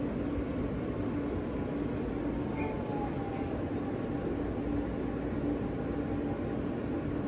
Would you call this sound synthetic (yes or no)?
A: no